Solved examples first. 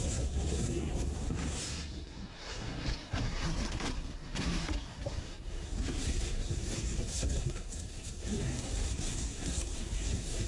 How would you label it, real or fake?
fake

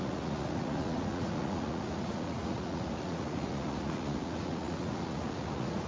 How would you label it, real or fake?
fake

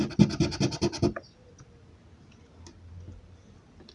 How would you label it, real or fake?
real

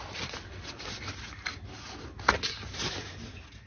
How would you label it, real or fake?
real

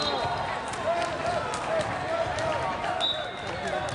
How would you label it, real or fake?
real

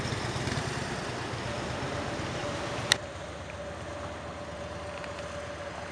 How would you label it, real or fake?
real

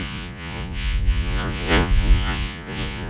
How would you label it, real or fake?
fake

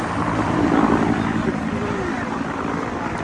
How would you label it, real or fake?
fake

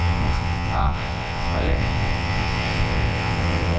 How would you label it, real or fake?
fake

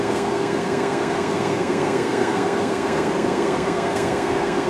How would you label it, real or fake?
fake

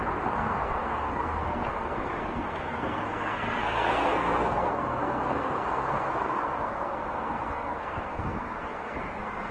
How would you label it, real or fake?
fake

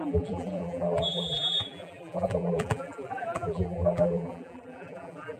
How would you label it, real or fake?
fake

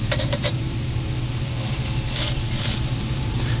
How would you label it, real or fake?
fake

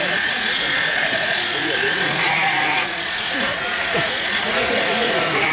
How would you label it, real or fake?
fake